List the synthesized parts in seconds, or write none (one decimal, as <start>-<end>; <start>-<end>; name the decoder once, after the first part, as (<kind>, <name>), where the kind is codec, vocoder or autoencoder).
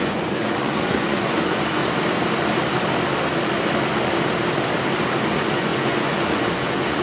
0.0-1.8 (vocoder, Vocos); 5.2-7.0